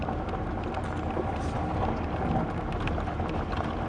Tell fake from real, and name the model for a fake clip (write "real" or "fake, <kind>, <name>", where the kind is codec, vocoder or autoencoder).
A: real